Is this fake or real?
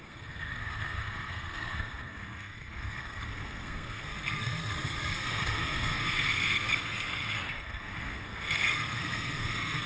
fake